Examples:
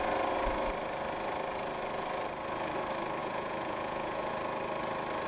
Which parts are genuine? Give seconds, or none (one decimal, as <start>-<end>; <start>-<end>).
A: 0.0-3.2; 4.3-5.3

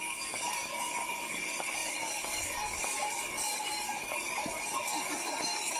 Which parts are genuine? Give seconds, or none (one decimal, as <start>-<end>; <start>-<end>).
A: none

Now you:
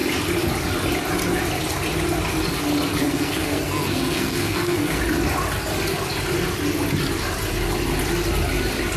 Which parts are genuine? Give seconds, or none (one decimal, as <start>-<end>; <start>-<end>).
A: 0.0-3.0; 5.0-9.0

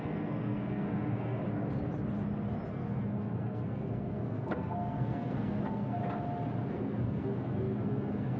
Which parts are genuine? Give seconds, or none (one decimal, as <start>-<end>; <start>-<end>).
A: 1.4-2.7; 6.0-6.7

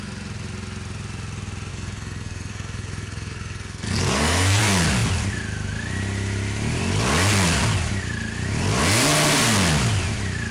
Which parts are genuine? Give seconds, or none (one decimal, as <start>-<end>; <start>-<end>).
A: 0.0-1.7; 4.6-10.5

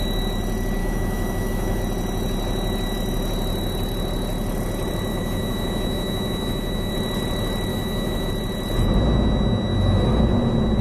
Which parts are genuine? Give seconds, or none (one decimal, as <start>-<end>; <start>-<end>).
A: 0.0-0.8; 1.8-5.1; 6.9-7.7; 8.3-9.7; 10.2-10.8

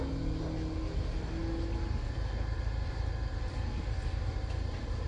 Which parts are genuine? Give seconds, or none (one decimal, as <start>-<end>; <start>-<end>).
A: 0.0-5.1